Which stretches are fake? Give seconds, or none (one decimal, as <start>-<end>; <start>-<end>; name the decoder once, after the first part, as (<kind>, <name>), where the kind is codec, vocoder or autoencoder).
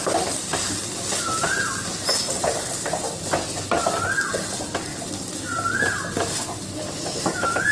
none